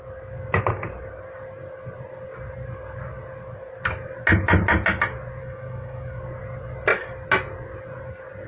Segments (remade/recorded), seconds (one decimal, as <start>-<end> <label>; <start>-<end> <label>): 0.0-5.4 recorded; 5.4-6.2 remade; 6.2-8.5 recorded